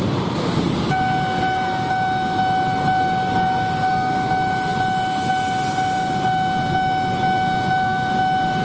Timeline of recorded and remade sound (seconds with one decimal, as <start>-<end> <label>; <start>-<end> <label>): 0.0-8.6 recorded